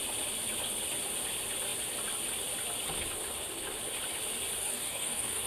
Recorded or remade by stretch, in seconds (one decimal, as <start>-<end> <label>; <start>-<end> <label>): 0.0-4.6 recorded; 4.6-5.5 remade